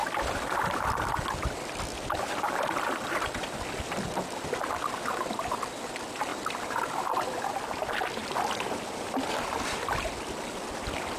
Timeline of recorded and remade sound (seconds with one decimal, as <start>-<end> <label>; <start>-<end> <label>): 0.0-11.2 recorded

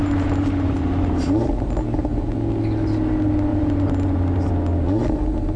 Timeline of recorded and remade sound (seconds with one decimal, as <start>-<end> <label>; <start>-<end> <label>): 0.0-1.5 remade; 1.5-3.5 recorded; 3.5-4.5 remade; 4.5-5.6 recorded

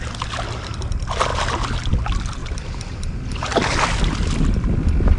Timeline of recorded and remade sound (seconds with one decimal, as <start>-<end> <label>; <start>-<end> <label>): 0.0-5.2 recorded